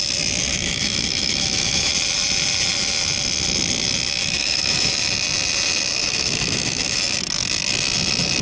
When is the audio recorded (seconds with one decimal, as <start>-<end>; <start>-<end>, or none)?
0.0-0.5; 1.9-4.2; 4.9-6.0; 7.0-8.4